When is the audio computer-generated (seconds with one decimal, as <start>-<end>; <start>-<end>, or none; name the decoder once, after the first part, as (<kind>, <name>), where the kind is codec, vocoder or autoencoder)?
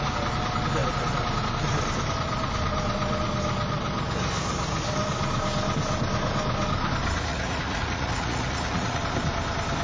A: 7.3-9.0 (vocoder, Vocos)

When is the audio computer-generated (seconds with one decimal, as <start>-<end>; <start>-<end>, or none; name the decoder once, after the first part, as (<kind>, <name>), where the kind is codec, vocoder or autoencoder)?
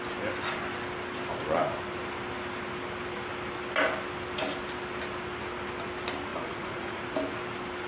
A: 6.3-7.0 (vocoder, Vocos)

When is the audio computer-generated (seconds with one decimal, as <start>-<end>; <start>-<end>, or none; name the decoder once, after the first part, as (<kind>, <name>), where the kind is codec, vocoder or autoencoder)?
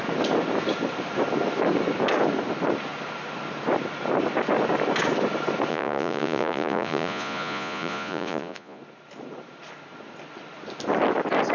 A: 5.7-8.8 (vocoder, Vocos)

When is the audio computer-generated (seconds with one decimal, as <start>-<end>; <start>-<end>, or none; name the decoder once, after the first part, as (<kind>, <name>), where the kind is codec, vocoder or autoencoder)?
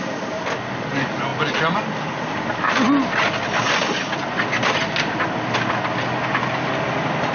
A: none